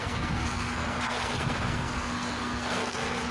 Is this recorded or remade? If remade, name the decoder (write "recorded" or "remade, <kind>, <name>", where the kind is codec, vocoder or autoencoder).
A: remade, codec, SNAC